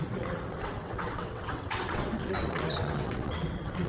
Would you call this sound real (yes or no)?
no